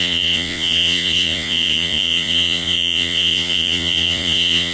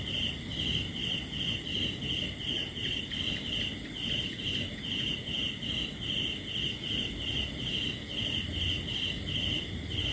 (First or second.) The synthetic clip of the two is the first